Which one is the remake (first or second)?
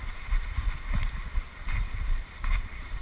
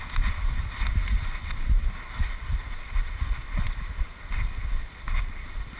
first